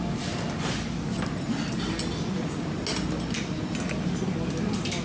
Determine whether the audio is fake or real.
real